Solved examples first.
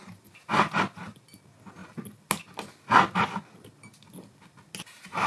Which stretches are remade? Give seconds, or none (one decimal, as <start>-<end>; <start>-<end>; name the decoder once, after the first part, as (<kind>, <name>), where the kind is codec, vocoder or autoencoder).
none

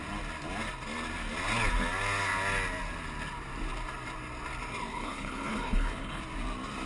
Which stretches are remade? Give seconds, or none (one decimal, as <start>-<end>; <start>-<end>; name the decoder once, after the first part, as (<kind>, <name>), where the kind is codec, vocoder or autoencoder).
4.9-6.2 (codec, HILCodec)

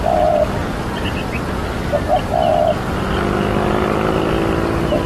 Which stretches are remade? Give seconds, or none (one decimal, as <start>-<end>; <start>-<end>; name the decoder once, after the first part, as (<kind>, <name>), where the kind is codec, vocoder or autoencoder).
none

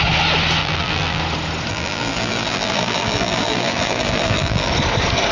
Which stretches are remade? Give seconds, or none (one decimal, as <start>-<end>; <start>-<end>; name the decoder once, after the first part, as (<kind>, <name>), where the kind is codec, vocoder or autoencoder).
0.6-1.2 (vocoder, BigVGAN v2); 1.7-4.7